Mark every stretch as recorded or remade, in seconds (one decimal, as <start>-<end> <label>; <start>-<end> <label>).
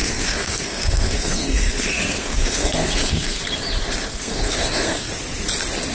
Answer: 0.0-3.4 remade; 3.4-4.1 recorded; 4.1-5.1 remade; 5.1-5.9 recorded